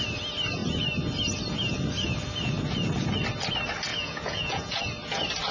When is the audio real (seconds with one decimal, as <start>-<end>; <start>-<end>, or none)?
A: 0.0-3.9; 4.8-5.5